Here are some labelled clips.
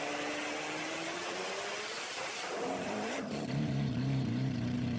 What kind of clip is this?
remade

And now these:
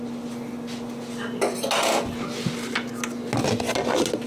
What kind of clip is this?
recorded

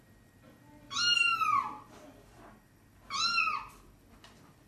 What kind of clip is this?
recorded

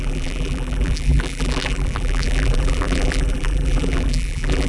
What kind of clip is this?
remade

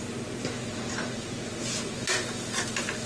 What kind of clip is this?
recorded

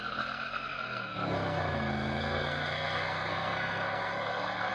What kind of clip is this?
remade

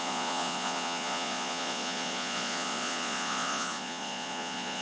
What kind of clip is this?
remade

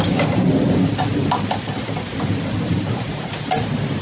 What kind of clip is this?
recorded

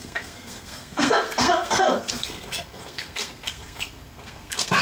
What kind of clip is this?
remade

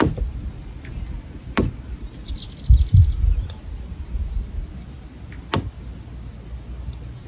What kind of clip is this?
recorded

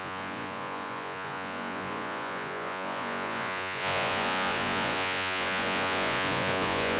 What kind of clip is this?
remade